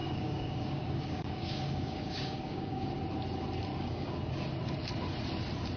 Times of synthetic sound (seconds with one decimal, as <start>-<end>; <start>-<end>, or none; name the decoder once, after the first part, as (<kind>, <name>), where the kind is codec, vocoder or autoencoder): 0.0-2.9 (codec, DAC); 3.7-4.3